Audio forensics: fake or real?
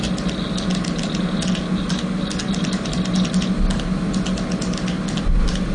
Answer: real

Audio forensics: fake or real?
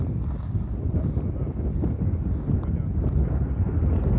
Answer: real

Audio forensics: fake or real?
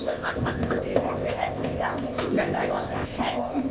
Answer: fake